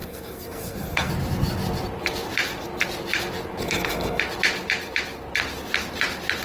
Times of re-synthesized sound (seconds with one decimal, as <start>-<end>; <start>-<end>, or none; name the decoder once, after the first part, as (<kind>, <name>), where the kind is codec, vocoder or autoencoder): 0.0-1.1 (codec, SNAC); 3.6-4.2